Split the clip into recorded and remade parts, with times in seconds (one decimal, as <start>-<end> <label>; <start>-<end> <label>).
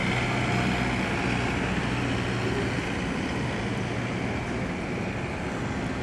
0.0-6.0 recorded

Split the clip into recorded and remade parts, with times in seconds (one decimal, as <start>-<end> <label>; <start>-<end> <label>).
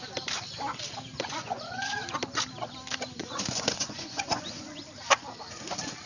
0.0-1.1 recorded; 1.1-1.9 remade; 1.9-3.2 recorded; 3.2-4.8 remade; 4.8-6.1 recorded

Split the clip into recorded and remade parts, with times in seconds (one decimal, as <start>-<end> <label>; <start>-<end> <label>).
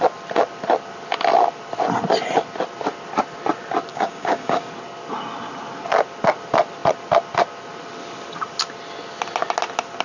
0.0-3.9 recorded; 3.9-4.6 remade; 4.6-10.0 recorded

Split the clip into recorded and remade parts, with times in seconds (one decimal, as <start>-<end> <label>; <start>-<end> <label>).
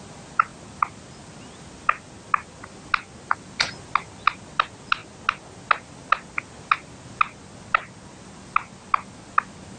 0.0-9.8 recorded